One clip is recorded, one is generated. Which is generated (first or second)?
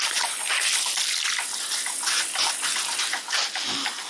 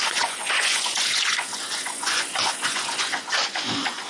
second